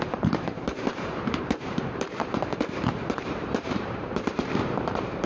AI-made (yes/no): yes